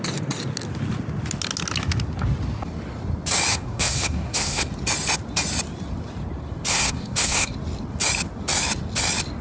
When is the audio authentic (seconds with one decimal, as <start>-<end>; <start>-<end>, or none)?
0.0-3.5; 4.7-6.7; 7.5-9.4